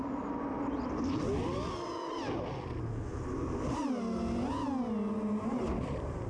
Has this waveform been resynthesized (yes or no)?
no